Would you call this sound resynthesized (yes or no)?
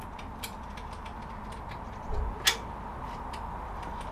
no